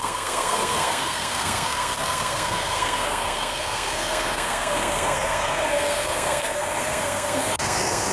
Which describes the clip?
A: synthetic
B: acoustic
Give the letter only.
A